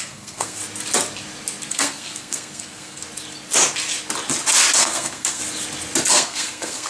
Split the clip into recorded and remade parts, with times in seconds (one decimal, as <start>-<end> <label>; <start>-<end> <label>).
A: 0.0-0.6 remade; 0.6-1.7 recorded; 1.7-3.0 remade; 3.0-4.8 recorded; 4.8-5.4 remade; 5.4-6.1 recorded; 6.1-6.9 remade